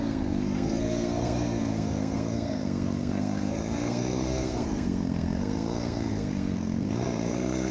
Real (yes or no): no